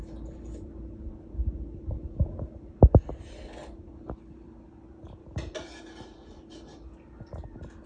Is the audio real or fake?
real